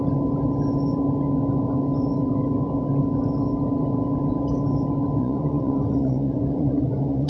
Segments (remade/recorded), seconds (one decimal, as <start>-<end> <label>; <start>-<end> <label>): 0.0-5.2 recorded; 5.2-7.3 remade